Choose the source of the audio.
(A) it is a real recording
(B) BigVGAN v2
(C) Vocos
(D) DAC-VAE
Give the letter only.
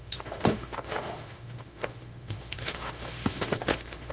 D